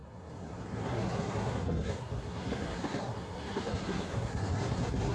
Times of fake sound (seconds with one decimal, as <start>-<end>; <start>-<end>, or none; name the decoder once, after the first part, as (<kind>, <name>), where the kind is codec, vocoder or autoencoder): 0.0-5.1 (codec, SNAC)